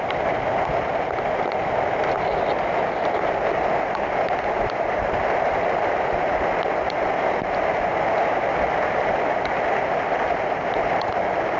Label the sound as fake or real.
real